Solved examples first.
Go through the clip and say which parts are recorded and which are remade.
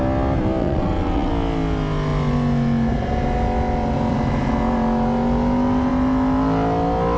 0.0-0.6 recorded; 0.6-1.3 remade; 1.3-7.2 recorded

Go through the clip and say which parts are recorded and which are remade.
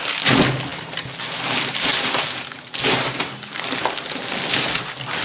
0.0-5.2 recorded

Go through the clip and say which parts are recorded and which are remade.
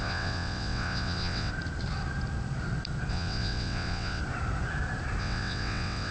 0.0-1.5 remade; 1.5-3.1 recorded; 3.1-4.2 remade; 4.2-5.2 recorded; 5.2-6.1 remade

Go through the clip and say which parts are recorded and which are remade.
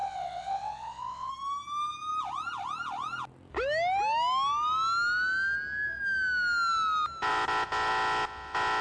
0.0-1.3 remade; 1.3-8.8 recorded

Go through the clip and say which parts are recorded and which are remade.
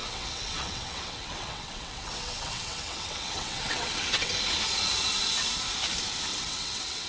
0.0-4.3 remade; 4.3-6.3 recorded; 6.3-7.1 remade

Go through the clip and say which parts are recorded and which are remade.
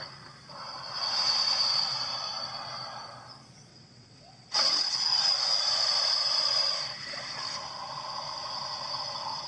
0.0-3.7 recorded; 3.7-4.9 remade; 4.9-9.5 recorded